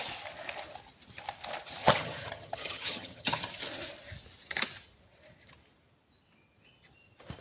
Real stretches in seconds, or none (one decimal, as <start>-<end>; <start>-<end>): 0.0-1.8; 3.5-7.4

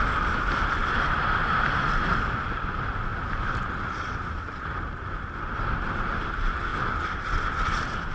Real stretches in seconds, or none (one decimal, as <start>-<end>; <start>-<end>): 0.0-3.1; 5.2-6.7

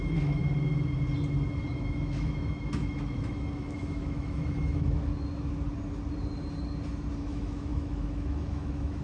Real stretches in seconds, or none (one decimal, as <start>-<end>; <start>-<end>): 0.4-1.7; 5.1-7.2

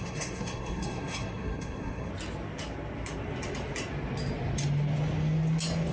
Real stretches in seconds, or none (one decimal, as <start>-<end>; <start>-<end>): 2.1-5.9

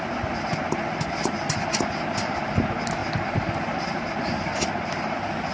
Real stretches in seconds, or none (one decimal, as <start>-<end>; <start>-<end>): 0.0-3.0; 4.3-5.5